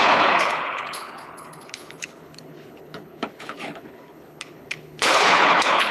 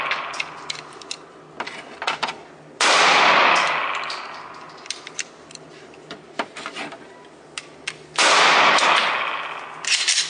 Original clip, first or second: second